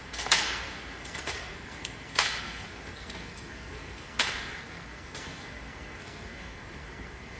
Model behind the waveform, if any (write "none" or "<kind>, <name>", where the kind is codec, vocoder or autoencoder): codec, SNAC